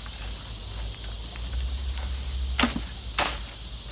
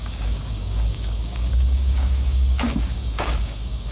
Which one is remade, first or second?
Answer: second